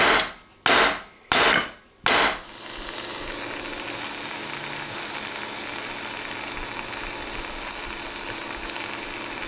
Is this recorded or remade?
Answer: recorded